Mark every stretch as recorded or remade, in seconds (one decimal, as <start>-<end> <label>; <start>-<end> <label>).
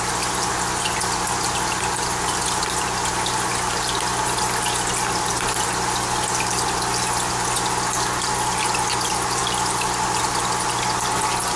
0.0-11.6 recorded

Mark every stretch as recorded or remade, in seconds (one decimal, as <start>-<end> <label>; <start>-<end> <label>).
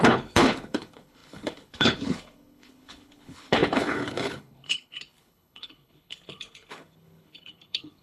0.0-8.0 remade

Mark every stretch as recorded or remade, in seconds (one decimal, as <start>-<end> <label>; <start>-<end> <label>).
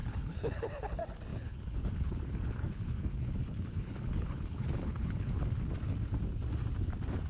0.0-0.9 remade; 0.9-1.3 recorded; 1.3-5.4 remade; 5.4-7.3 recorded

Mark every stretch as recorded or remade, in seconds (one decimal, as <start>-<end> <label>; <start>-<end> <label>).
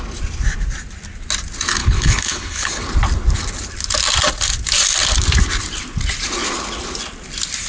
0.0-1.8 recorded; 1.8-2.7 remade; 2.7-7.7 recorded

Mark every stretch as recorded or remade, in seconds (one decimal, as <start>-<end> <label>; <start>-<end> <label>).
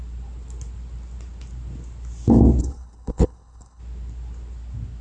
0.0-2.6 recorded; 2.6-3.8 remade; 3.8-5.0 recorded